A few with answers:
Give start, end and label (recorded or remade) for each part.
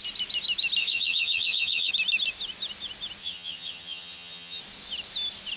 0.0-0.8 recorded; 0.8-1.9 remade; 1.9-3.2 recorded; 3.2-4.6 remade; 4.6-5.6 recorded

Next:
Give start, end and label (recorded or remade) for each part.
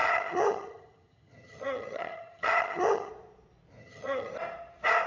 0.0-3.1 remade; 3.1-3.8 recorded; 3.8-4.3 remade; 4.3-5.1 recorded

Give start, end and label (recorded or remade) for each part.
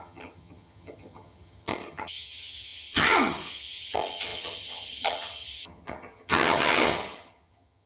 0.0-7.9 remade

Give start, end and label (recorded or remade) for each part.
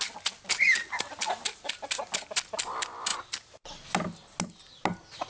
0.0-5.3 recorded